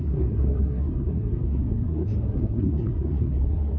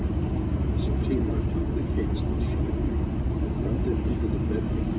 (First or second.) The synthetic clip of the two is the first